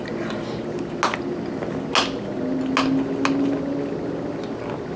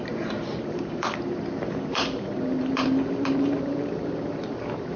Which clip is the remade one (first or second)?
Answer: second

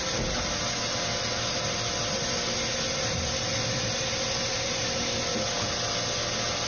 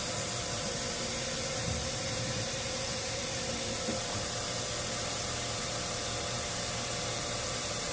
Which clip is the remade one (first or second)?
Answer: second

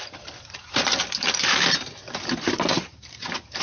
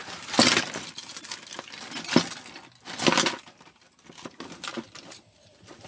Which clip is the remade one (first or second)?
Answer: first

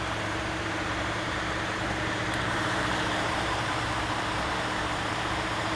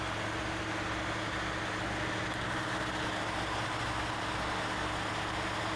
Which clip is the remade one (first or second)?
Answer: first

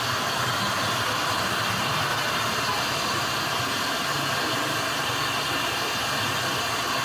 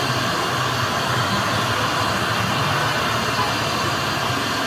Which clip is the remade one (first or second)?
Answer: first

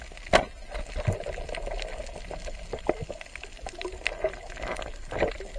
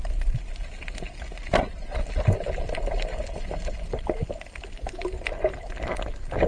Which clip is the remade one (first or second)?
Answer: second